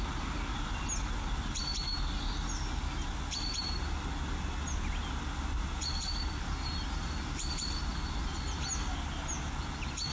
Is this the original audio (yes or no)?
yes